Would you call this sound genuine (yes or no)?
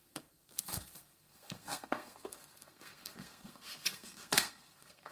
no